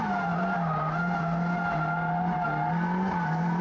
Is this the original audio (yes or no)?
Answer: no